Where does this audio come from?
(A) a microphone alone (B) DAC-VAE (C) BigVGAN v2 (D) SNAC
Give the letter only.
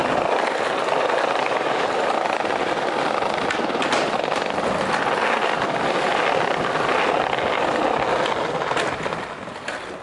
A